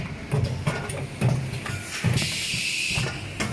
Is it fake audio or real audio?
real